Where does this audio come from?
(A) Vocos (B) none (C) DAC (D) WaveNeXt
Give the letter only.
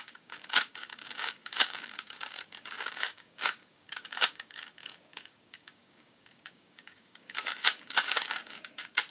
C